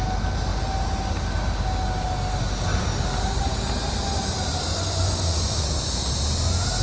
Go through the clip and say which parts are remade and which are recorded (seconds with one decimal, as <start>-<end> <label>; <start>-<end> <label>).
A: 0.0-4.7 recorded; 4.7-6.0 remade; 6.0-6.8 recorded